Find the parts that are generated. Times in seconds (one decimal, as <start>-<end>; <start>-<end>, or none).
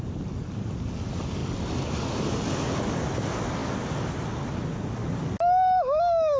none